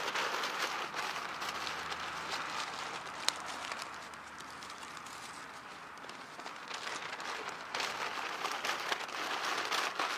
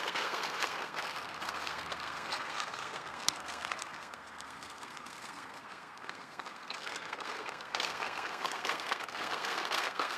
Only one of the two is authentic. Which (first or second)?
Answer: first